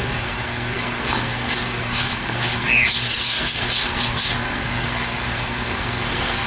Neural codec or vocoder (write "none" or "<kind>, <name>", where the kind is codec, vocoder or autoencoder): codec, SNAC